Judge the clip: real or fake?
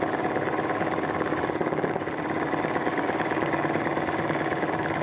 fake